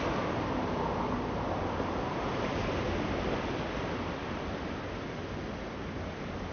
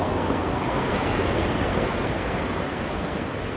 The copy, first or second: second